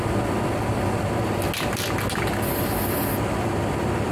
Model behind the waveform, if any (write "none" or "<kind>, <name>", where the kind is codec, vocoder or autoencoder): none